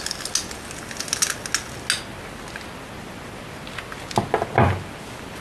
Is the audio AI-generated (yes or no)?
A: no